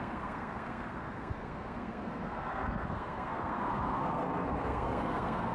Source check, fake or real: fake